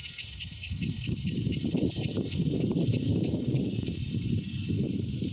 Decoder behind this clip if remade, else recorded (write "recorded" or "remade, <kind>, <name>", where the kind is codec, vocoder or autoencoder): remade, codec, DAC